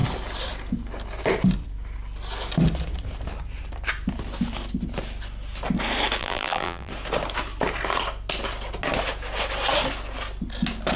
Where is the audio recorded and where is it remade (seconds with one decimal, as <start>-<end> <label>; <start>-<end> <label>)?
0.0-6.2 recorded; 6.2-6.9 remade; 6.9-11.0 recorded

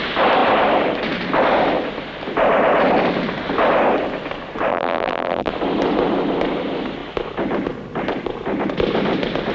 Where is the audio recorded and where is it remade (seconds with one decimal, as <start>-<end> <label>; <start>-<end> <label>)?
0.0-4.7 recorded; 4.7-5.5 remade; 5.5-9.5 recorded

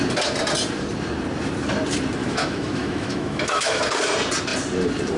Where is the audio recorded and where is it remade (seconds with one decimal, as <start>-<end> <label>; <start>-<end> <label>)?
0.0-2.2 recorded; 2.2-3.8 remade; 3.8-5.2 recorded

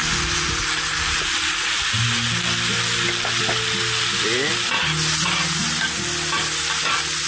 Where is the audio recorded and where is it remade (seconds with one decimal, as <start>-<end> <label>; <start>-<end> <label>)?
0.0-7.3 recorded

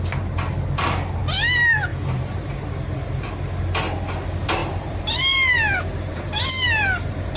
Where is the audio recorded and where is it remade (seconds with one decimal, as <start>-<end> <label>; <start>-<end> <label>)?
0.0-1.9 recorded; 1.9-2.5 remade; 2.5-4.6 recorded; 4.6-6.4 remade; 6.4-7.4 recorded

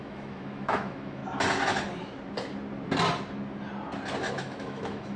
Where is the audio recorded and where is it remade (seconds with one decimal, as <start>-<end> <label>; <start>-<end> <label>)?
0.0-1.2 remade; 1.2-4.3 recorded; 4.3-5.2 remade

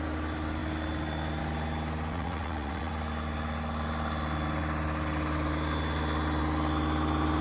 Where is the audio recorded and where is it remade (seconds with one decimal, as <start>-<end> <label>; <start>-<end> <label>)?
0.0-2.1 recorded; 2.1-2.9 remade; 2.9-7.4 recorded

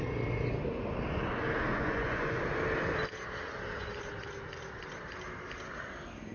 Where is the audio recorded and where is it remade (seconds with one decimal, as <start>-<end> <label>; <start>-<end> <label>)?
0.0-1.7 recorded; 1.7-2.4 remade; 2.4-6.3 recorded